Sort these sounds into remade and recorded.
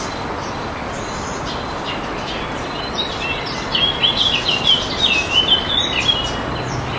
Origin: recorded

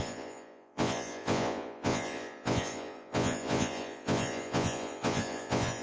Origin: remade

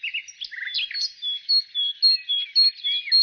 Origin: recorded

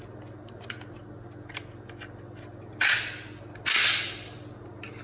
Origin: recorded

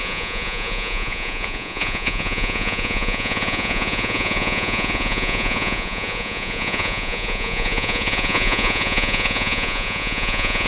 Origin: remade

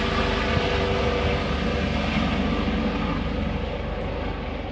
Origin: recorded